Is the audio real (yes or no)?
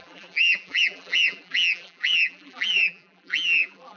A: no